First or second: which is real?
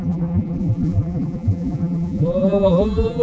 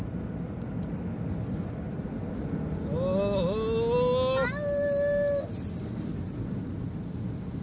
second